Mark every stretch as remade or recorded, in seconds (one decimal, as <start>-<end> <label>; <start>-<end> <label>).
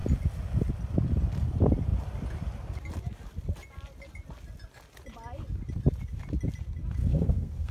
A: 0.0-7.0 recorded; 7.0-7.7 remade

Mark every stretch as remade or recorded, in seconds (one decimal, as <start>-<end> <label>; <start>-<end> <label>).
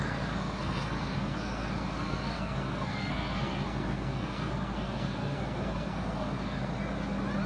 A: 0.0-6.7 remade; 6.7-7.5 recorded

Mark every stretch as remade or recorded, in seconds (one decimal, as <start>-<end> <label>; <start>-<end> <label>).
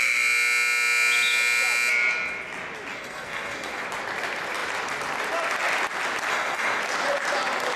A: 0.0-2.9 recorded; 2.9-3.8 remade; 3.8-6.3 recorded; 6.3-6.8 remade; 6.8-7.8 recorded